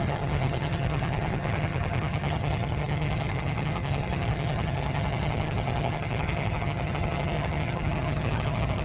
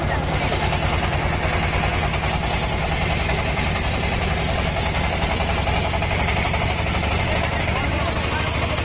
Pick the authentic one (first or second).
second